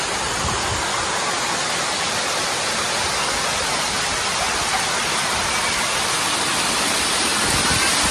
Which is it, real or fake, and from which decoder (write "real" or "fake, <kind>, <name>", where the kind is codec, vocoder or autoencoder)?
real